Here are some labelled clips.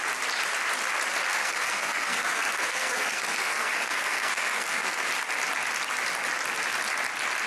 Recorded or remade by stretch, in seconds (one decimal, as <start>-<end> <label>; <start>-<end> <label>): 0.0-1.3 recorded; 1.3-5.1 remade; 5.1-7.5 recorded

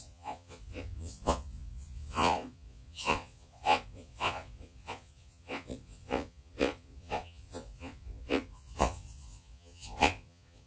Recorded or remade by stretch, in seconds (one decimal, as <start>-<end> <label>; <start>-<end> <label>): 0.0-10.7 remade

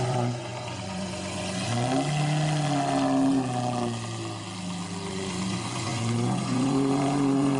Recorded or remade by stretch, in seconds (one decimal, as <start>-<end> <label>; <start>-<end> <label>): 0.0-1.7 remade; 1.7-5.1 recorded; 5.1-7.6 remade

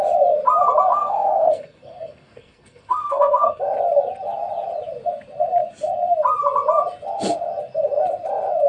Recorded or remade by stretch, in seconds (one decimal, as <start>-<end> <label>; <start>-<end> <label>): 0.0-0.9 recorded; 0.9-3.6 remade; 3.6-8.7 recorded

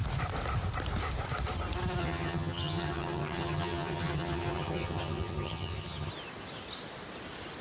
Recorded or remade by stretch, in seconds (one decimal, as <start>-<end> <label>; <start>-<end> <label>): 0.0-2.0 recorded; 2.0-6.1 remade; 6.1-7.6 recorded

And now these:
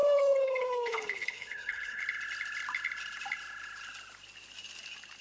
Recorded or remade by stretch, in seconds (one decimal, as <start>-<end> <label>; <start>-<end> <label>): 0.0-2.0 remade; 2.0-5.2 recorded

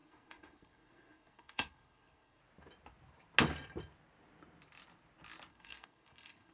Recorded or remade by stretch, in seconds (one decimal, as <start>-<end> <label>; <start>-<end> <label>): 0.0-2.4 remade; 2.4-5.5 recorded; 5.5-6.5 remade